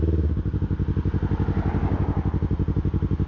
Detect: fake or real real